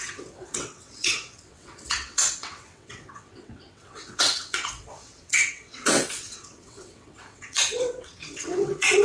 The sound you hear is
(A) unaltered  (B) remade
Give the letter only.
B